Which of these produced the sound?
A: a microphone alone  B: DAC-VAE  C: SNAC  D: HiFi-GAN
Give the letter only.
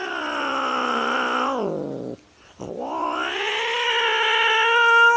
A